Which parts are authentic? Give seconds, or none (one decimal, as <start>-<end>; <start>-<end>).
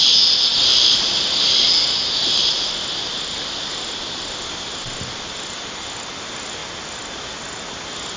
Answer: 0.0-8.2